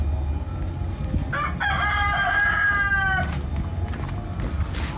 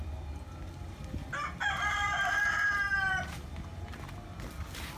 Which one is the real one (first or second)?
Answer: first